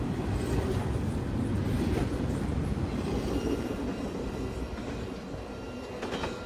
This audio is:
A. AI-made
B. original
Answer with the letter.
B